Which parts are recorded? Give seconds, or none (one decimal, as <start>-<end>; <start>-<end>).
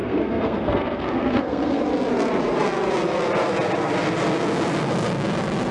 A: 1.8-5.7